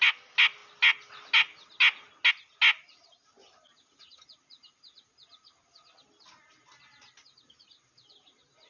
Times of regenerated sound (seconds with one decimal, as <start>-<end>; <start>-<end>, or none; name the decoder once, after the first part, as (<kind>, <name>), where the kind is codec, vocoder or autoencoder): none